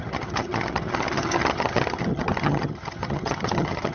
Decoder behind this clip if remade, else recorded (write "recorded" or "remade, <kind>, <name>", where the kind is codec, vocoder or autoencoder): remade, vocoder, HiFi-GAN